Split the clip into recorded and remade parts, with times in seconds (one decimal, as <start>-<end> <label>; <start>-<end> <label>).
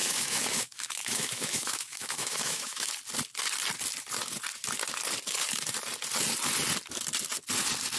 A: 0.0-2.9 remade; 2.9-8.0 recorded